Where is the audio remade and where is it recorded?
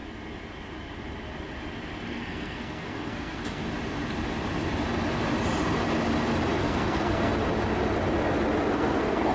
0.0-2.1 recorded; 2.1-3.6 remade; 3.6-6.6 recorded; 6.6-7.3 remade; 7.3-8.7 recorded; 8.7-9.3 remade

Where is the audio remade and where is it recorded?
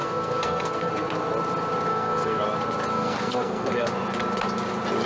0.0-0.9 remade; 0.9-1.9 recorded; 1.9-2.4 remade; 2.4-2.9 recorded; 2.9-3.7 remade; 3.7-5.1 recorded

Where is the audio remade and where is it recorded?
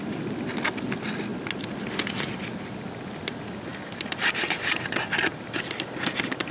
0.0-6.5 recorded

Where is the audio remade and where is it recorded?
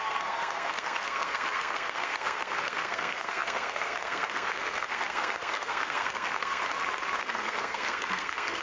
0.0-6.6 remade; 6.6-7.2 recorded; 7.2-8.6 remade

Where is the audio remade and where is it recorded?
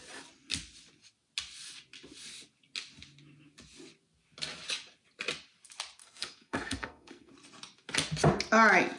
0.0-6.0 recorded; 6.0-7.3 remade; 7.3-9.0 recorded